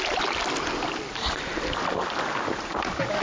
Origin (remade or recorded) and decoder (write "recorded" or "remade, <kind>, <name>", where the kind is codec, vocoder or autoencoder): recorded